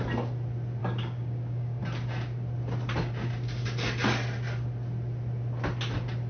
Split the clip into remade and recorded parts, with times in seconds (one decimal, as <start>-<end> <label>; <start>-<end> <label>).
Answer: 0.0-0.8 recorded; 0.8-1.8 remade; 1.8-6.3 recorded